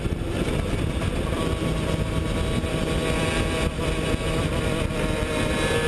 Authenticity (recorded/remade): recorded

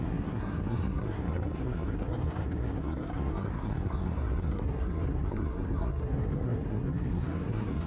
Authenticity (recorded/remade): remade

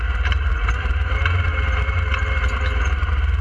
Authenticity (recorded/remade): remade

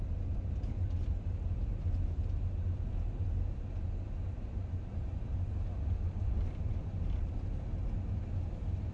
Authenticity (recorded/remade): recorded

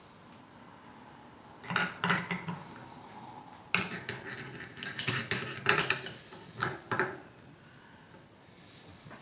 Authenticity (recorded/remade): recorded